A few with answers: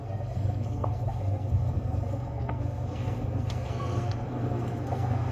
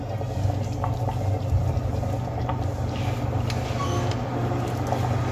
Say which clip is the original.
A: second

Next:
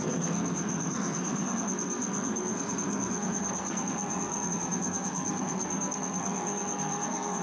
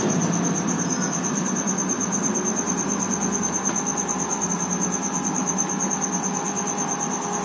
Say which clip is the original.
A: second